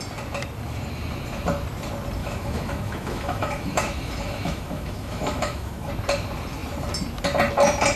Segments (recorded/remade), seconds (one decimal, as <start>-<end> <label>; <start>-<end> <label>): 0.0-2.2 recorded; 2.2-5.9 remade; 5.9-8.0 recorded